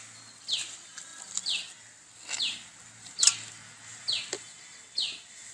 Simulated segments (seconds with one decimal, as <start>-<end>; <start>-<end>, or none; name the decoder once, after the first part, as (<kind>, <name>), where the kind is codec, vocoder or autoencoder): none